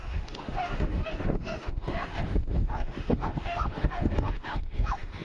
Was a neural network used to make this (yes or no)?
yes